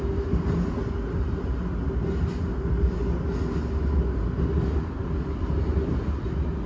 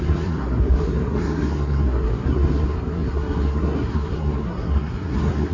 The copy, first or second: second